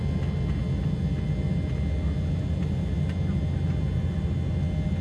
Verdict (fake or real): real